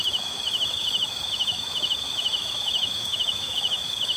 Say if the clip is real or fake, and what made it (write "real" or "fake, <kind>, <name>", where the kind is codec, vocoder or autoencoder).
fake, autoencoder, DAC-VAE